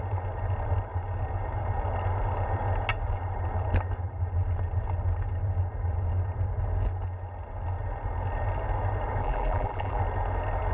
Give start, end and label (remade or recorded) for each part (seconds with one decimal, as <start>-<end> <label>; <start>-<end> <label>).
0.0-9.2 recorded; 9.2-10.0 remade; 10.0-10.7 recorded